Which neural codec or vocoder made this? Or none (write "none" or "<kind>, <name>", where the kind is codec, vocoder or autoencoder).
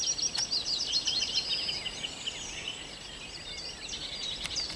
none